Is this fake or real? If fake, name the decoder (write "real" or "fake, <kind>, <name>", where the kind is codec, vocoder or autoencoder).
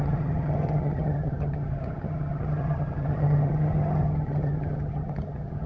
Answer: fake, vocoder, HiFi-GAN